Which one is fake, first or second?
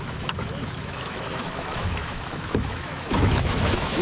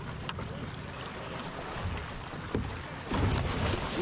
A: first